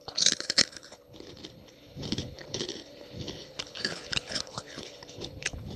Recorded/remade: remade